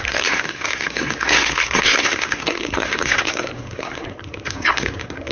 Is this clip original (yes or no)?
no